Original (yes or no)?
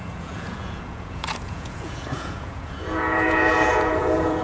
no